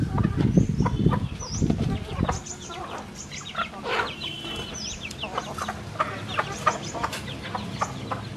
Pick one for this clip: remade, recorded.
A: recorded